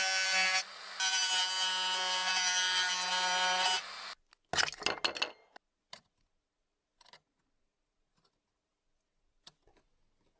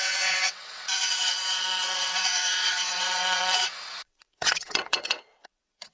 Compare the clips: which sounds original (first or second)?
first